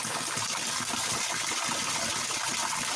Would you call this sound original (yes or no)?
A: yes